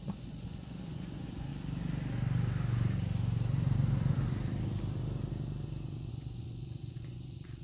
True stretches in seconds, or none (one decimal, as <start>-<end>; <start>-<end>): 1.5-6.1